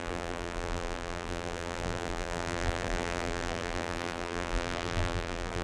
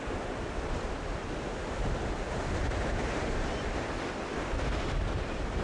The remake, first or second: first